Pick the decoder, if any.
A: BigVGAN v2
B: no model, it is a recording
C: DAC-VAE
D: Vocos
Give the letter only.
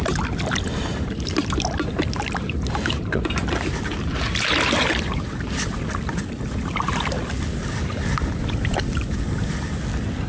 B